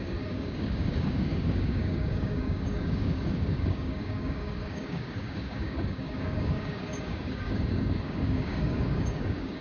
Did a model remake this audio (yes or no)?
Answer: yes